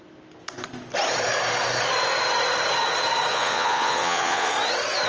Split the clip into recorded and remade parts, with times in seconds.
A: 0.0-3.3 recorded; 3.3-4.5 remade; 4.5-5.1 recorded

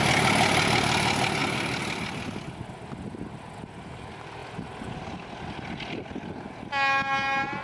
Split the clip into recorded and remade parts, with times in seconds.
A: 0.0-7.6 recorded

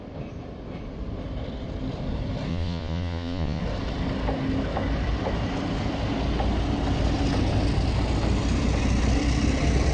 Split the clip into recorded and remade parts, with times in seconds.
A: 0.0-2.5 recorded; 2.5-3.6 remade; 3.6-9.9 recorded

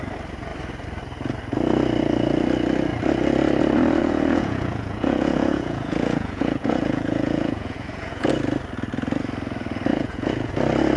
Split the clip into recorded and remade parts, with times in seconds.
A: 0.0-4.0 recorded; 4.0-8.3 remade; 8.3-9.9 recorded; 9.9-10.5 remade; 10.5-11.0 recorded

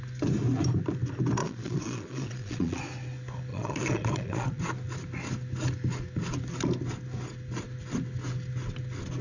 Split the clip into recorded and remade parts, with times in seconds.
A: 0.0-1.4 recorded; 1.4-2.8 remade; 2.8-3.5 recorded; 3.5-4.6 remade; 4.6-9.2 recorded

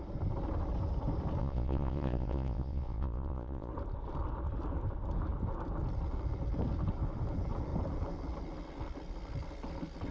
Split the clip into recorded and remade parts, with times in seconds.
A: 0.0-1.4 recorded; 1.4-3.7 remade; 3.7-10.1 recorded

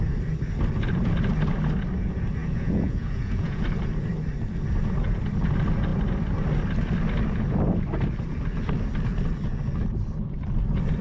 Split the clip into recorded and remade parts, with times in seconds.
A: 0.0-2.4 recorded; 2.4-3.6 remade; 3.6-11.0 recorded

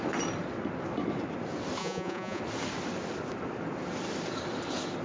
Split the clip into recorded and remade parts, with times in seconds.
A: 0.0-1.8 recorded; 1.8-2.4 remade; 2.4-5.0 recorded